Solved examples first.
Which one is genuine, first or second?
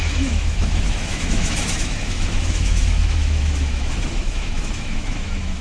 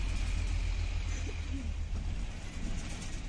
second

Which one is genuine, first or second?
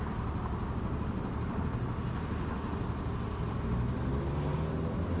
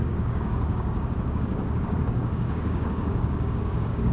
first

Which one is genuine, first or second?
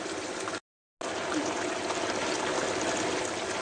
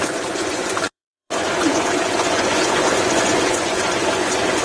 first